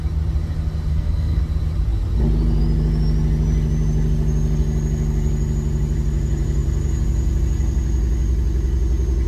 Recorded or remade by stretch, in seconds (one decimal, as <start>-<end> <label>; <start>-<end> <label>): 0.0-0.9 recorded; 0.9-1.4 remade; 1.4-9.3 recorded